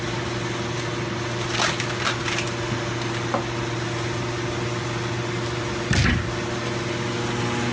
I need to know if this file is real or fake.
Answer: real